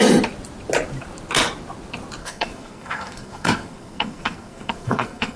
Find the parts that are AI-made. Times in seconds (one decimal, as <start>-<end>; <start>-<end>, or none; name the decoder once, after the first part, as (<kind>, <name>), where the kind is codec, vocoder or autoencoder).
2.2-5.4 (codec, SNAC)